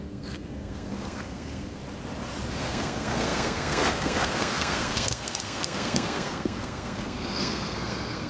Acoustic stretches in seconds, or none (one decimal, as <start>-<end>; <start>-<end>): 1.8-2.5